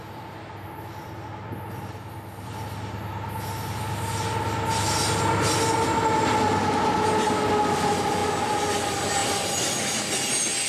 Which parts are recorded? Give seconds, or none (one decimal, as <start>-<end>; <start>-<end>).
0.0-10.7